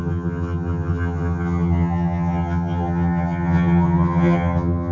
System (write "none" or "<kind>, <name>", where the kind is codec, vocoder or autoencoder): vocoder, HiFi-GAN